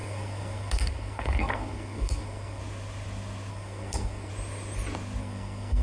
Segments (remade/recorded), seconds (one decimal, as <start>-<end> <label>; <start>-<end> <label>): 0.0-2.6 remade; 2.6-3.5 recorded; 3.5-4.3 remade; 4.3-5.2 recorded; 5.2-5.8 remade